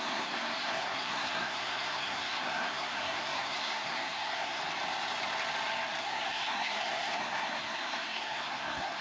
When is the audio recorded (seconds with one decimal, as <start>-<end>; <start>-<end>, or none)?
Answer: 4.6-6.0